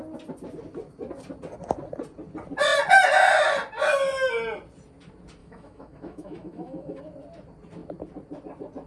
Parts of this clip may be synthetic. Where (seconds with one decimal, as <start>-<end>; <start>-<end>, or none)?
5.4-7.0